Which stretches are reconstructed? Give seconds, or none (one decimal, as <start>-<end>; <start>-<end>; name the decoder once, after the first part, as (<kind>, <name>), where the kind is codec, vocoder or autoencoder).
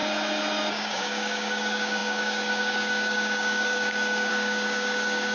0.7-5.3 (codec, DAC)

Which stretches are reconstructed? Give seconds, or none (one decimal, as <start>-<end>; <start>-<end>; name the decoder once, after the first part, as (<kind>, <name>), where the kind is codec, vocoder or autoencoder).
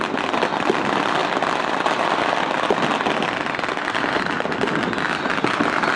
none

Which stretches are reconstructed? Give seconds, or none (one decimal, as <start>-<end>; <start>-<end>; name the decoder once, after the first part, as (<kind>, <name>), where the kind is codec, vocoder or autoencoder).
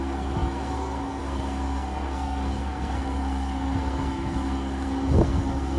0.0-5.8 (codec, SNAC)